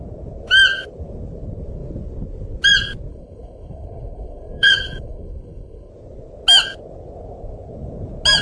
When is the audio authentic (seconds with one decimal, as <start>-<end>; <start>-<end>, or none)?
0.0-3.1; 5.9-8.4